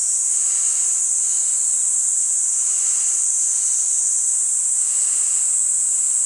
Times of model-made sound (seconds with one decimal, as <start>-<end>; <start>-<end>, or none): none